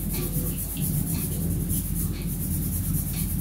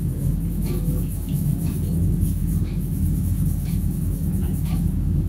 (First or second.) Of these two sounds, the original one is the first